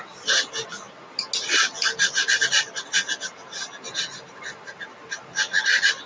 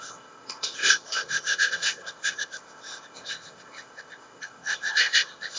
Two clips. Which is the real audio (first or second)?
first